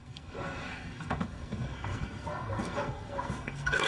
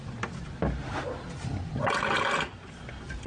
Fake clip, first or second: first